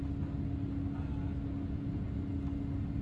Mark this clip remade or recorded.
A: recorded